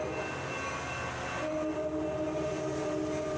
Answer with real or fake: real